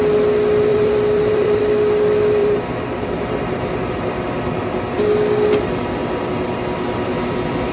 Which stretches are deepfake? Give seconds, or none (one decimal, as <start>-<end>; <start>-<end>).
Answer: 0.7-1.6; 2.4-3.9